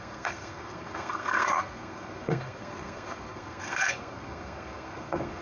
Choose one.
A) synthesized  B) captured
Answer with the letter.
A